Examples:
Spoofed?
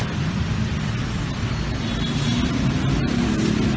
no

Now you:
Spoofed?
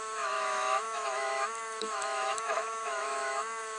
yes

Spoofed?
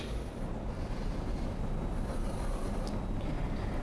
no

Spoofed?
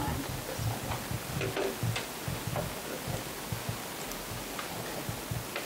no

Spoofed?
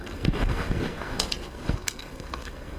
yes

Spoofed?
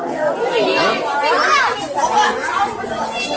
no